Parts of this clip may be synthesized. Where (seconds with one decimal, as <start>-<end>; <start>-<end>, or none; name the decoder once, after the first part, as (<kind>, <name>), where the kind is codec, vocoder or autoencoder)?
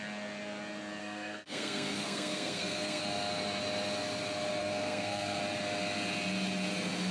1.0-3.0 (codec, SNAC); 4.6-5.4